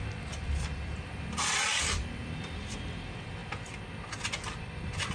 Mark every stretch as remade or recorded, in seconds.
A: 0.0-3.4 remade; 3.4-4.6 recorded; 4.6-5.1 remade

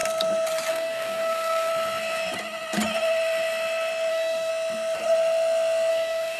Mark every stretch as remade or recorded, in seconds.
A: 0.0-0.7 recorded; 0.7-1.7 remade; 1.7-4.1 recorded; 4.1-4.5 remade; 4.5-5.9 recorded; 5.9-6.4 remade

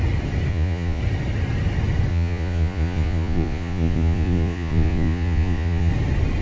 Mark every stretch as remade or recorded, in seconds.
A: 0.0-0.5 recorded; 0.5-1.0 remade; 1.0-2.1 recorded; 2.1-5.9 remade; 5.9-6.4 recorded

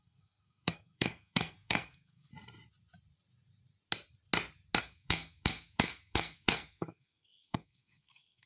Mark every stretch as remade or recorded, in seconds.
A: 0.0-2.3 remade; 2.3-4.8 recorded; 4.8-8.5 remade

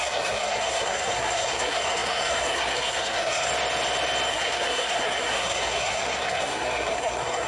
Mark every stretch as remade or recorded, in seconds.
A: 0.0-3.5 remade; 3.5-4.3 recorded; 4.3-7.5 remade

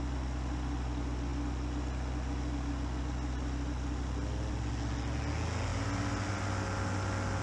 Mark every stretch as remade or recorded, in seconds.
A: 0.0-7.4 recorded

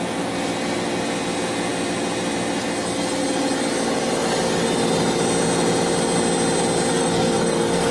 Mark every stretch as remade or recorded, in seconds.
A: 0.0-6.9 recorded; 6.9-7.9 remade

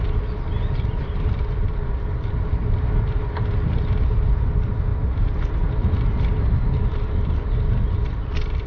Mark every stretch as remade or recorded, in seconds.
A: 0.0-8.7 recorded